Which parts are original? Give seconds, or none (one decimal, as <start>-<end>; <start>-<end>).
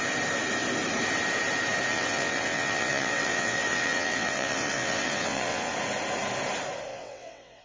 0.0-1.9; 5.7-6.9